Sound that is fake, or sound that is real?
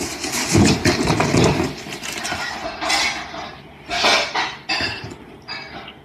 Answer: real